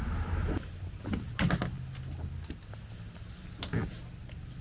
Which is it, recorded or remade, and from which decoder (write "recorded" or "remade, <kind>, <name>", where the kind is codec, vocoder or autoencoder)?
recorded